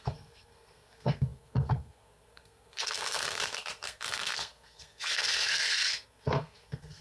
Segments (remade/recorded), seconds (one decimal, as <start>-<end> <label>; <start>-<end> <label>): 0.0-7.0 remade